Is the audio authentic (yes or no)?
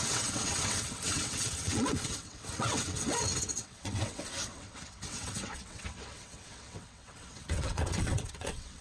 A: no